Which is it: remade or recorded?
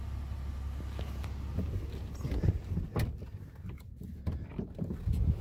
recorded